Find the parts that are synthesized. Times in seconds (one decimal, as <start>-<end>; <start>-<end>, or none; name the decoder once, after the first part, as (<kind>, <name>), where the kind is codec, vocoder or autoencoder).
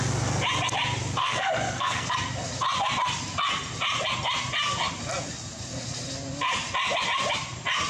1.2-2.1 (codec, SNAC)